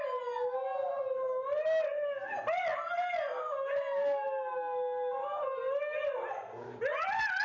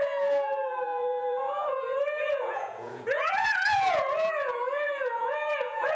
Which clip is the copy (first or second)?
second